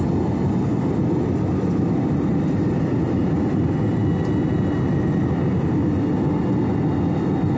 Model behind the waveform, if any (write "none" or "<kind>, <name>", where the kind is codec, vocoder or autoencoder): none